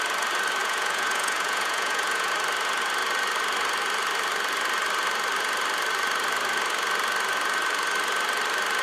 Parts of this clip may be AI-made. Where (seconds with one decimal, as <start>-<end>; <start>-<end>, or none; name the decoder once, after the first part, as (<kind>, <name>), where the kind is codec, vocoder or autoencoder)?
0.6-2.3 (vocoder, Vocos)